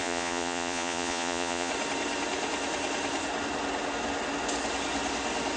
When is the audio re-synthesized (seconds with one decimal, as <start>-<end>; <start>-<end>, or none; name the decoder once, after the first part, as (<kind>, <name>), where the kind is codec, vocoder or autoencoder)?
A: 0.0-1.7 (vocoder, Vocos)